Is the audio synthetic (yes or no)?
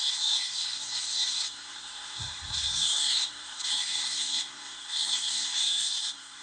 yes